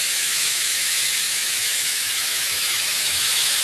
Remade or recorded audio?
remade